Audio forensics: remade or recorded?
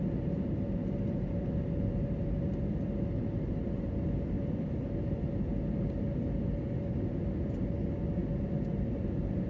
recorded